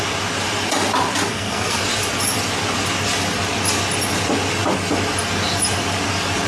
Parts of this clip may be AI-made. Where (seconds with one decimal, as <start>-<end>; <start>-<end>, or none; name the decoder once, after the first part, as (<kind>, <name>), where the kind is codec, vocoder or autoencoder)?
1.3-1.8 (codec, SNAC)